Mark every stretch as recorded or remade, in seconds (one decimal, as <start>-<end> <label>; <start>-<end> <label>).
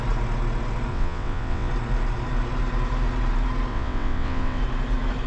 0.0-0.9 recorded; 0.9-1.7 remade; 1.7-3.7 recorded; 3.7-4.6 remade; 4.6-5.3 recorded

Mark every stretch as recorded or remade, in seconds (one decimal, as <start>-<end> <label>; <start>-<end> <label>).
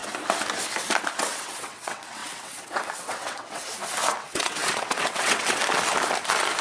0.0-1.1 recorded; 1.1-3.6 remade; 3.6-4.2 recorded; 4.2-5.6 remade; 5.6-6.6 recorded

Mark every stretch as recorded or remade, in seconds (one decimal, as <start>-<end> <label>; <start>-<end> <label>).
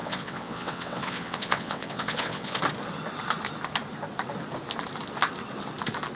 0.0-2.6 remade; 2.6-6.2 recorded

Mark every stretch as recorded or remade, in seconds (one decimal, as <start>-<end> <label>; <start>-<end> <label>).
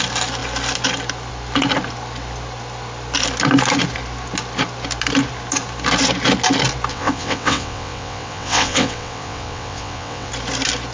0.0-6.9 recorded; 6.9-10.3 remade; 10.3-10.9 recorded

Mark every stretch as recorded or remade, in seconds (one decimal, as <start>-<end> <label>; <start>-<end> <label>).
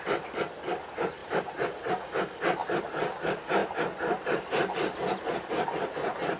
0.0-6.4 recorded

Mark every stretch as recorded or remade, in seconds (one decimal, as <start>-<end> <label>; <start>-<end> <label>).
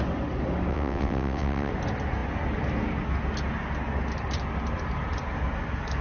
0.0-0.7 recorded; 0.7-1.7 remade; 1.7-6.0 recorded